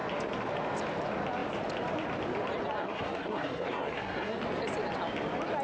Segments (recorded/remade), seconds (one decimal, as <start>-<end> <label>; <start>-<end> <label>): 0.0-2.8 recorded; 2.8-4.4 remade; 4.4-5.6 recorded